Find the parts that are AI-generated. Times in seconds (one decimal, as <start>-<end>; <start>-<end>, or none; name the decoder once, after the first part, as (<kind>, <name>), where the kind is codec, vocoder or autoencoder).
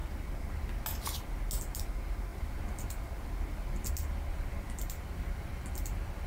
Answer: none